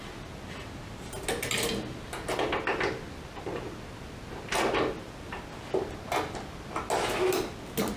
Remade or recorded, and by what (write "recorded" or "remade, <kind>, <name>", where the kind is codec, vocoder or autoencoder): recorded